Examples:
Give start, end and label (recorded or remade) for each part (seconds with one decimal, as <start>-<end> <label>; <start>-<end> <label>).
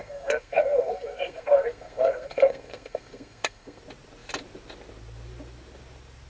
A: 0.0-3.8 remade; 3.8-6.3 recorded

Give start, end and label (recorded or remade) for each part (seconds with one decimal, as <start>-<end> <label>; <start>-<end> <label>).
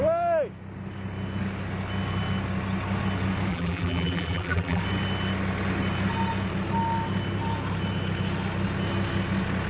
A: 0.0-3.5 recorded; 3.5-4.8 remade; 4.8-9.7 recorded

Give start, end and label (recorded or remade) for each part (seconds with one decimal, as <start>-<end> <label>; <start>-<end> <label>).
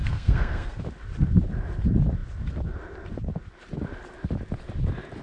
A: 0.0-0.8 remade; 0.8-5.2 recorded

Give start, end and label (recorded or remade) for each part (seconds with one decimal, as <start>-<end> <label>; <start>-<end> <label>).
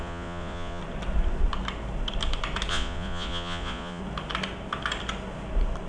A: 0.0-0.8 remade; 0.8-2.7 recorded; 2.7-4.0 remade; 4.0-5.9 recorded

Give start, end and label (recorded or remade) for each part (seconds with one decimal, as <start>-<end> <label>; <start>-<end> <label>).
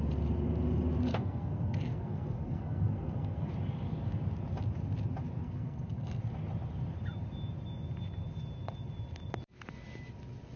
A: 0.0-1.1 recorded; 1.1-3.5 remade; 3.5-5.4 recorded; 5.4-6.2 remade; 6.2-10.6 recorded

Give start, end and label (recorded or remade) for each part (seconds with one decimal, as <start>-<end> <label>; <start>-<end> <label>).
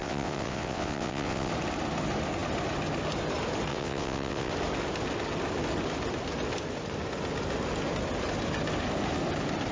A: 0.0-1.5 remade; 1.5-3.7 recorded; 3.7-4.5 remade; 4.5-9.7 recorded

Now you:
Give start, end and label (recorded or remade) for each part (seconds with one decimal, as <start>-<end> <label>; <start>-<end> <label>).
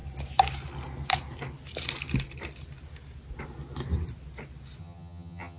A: 0.0-4.8 recorded; 4.8-5.6 remade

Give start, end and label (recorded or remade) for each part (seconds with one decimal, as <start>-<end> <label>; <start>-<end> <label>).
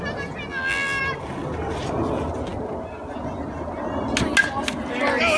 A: 0.0-0.5 recorded; 0.5-1.0 remade; 1.0-5.4 recorded